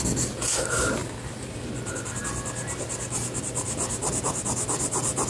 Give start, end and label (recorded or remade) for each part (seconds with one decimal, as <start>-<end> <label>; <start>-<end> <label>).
0.0-5.3 recorded